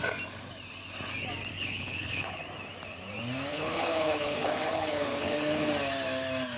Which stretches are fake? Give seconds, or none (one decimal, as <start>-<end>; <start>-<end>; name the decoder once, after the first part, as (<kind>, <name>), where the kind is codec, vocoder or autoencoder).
1.5-2.4 (codec, HILCodec); 3.5-5.7